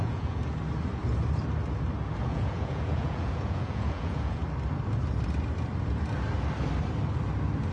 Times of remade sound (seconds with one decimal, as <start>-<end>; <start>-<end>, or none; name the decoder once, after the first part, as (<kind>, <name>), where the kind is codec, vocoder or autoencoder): 0.0-0.4 (vocoder, Vocos); 2.2-4.4